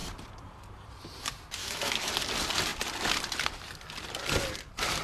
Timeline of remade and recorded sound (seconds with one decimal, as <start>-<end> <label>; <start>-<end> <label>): 0.0-1.6 recorded; 1.6-2.1 remade; 2.1-5.0 recorded